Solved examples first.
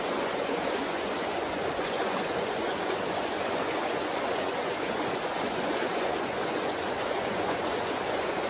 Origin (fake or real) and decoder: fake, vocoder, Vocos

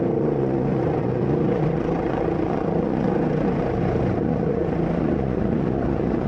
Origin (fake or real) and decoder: fake, vocoder, Vocos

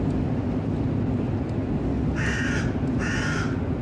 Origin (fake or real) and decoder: real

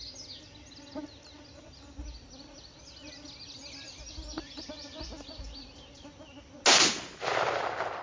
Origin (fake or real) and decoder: real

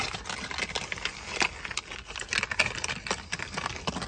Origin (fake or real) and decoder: real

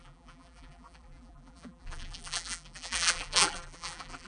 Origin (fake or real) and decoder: fake, vocoder, BigVGAN v2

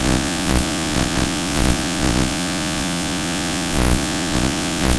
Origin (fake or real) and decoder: fake, vocoder, Vocos